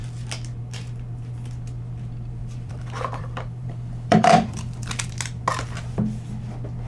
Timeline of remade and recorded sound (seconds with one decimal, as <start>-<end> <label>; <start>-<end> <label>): 0.0-2.4 recorded; 2.4-4.9 remade; 4.9-6.9 recorded